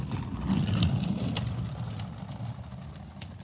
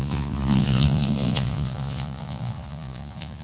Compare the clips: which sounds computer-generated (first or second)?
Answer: second